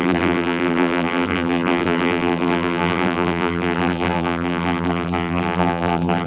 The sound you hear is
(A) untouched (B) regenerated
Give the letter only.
B